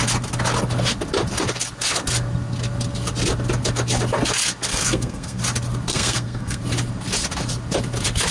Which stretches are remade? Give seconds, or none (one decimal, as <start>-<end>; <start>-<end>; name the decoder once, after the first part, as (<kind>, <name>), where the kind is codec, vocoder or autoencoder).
4.7-5.4 (codec, SNAC); 5.9-6.6